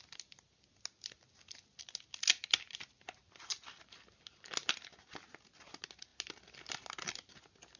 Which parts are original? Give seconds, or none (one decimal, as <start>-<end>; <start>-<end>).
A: 0.0-7.8